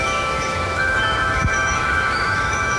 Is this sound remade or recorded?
remade